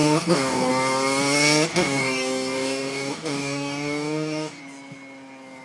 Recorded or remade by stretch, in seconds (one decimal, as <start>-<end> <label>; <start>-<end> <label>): 0.0-0.7 remade; 0.7-1.7 recorded; 1.7-4.6 remade; 4.6-5.6 recorded